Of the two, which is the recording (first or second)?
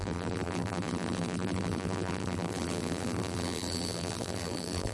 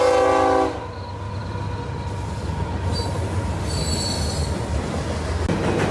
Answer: second